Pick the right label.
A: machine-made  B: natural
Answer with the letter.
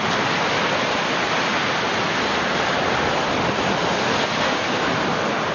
B